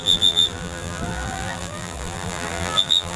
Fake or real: fake